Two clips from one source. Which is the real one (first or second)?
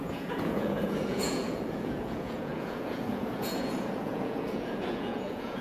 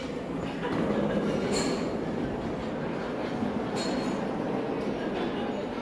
second